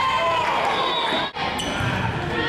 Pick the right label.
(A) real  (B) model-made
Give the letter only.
A